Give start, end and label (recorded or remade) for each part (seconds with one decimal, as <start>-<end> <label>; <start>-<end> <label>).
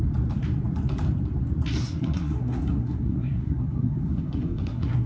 0.0-1.8 recorded; 1.8-5.1 remade